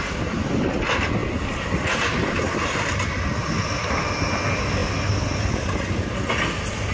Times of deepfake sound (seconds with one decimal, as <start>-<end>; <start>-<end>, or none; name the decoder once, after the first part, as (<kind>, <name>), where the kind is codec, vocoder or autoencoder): none